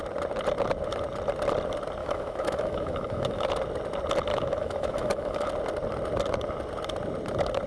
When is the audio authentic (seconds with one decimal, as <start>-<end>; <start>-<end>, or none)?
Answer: 0.0-2.0; 3.5-4.3; 5.5-7.7